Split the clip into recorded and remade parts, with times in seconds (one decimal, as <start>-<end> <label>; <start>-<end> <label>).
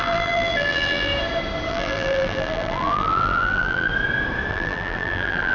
0.0-1.1 remade; 1.1-1.7 recorded; 1.7-3.9 remade; 3.9-4.5 recorded; 4.5-5.5 remade